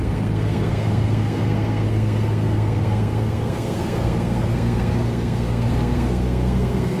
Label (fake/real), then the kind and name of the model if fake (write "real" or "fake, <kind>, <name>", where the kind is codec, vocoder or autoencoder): fake, codec, SNAC